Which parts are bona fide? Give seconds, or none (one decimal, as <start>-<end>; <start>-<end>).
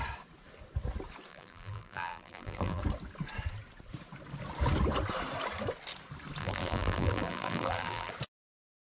0.0-1.3; 2.8-6.4; 8.1-8.8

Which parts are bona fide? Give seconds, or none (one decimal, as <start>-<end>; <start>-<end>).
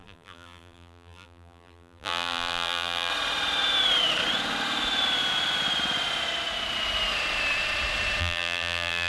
3.1-8.2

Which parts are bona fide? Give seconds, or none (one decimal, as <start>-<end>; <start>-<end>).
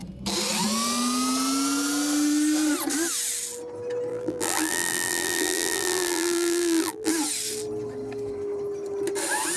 0.0-4.1; 7.1-9.6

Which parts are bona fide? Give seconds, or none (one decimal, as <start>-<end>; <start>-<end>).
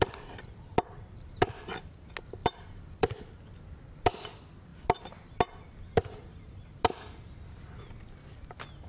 0.0-2.4; 3.2-8.9